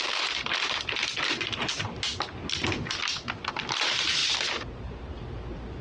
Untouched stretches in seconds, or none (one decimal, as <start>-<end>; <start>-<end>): 2.1-2.6